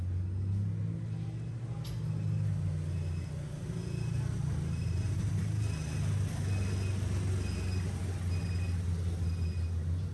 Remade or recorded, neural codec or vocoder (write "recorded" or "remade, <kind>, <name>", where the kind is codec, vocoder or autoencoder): recorded